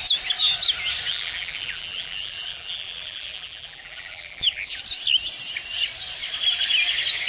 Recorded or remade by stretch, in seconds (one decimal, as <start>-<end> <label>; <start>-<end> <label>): 0.0-1.1 recorded; 1.1-4.8 remade; 4.8-7.3 recorded